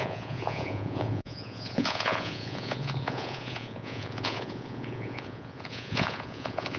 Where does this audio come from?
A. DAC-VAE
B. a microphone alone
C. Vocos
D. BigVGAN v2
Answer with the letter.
C